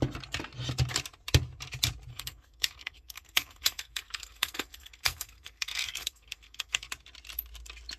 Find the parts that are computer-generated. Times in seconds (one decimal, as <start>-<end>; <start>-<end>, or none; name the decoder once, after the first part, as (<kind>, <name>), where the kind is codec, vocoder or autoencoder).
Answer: 2.1-6.9 (codec, SNAC)